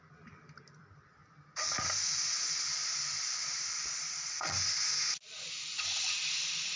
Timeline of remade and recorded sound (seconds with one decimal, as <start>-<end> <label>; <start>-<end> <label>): 0.0-6.8 recorded